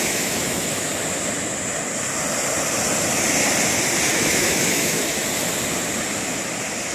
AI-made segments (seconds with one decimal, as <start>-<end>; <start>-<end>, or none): 0.0-0.9; 4.1-5.2

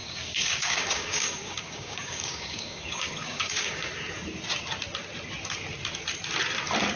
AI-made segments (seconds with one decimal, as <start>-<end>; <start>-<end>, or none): 0.0-3.9

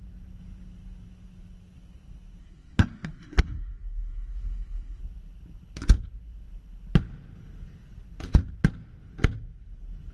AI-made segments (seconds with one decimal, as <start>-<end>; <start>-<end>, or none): 2.4-5.0

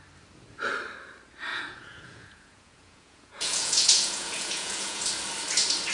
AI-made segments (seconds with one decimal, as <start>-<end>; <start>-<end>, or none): 1.5-5.0

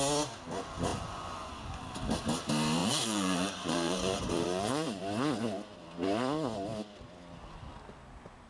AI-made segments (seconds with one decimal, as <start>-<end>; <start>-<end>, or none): 0.9-1.8; 2.8-5.0

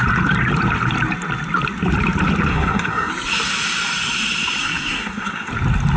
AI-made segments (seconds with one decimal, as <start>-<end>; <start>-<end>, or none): 2.5-3.1; 4.6-5.5

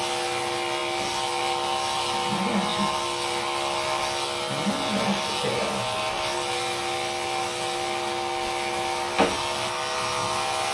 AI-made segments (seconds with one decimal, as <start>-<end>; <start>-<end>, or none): none